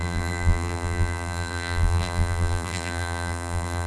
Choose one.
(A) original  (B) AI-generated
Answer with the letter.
B